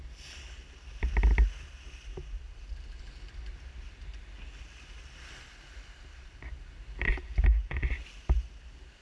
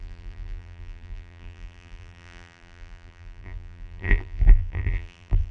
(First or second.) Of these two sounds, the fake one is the second